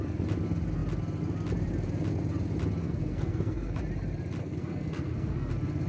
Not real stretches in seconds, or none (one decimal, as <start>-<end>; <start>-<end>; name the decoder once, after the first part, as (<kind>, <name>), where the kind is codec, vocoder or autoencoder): 2.8-3.8 (codec, SNAC); 4.4-5.5